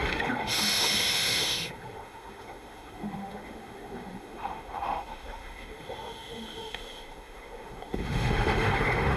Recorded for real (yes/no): no